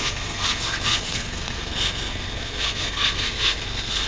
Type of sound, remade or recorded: remade